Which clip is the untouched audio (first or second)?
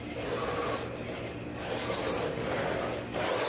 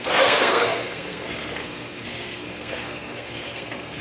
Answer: first